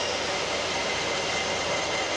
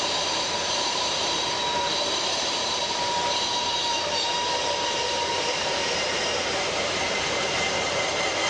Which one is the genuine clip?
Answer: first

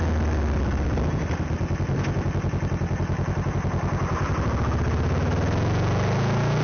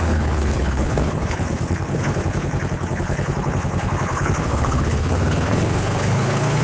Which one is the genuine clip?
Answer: first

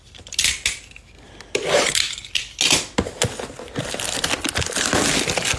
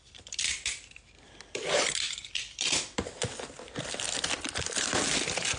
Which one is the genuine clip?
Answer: first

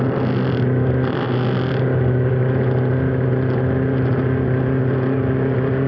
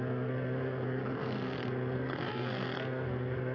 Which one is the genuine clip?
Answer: first